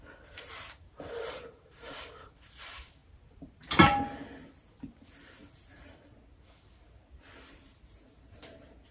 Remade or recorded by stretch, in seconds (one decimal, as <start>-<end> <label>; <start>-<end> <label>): 0.0-3.0 remade; 3.0-7.5 recorded; 7.5-8.9 remade